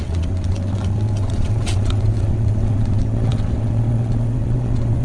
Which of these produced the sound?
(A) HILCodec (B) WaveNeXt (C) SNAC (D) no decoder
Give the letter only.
B